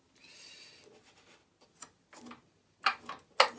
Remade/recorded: recorded